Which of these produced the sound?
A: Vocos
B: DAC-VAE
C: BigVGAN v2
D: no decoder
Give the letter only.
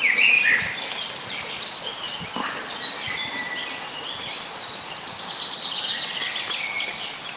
D